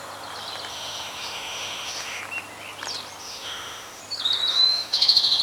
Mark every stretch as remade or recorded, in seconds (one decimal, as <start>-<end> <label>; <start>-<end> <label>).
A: 0.0-0.7 recorded; 0.7-2.2 remade; 2.2-3.2 recorded; 3.2-4.0 remade; 4.0-4.5 recorded; 4.5-5.4 remade